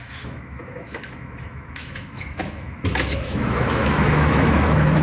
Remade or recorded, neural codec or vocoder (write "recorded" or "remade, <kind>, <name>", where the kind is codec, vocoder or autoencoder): remade, autoencoder, DAC-VAE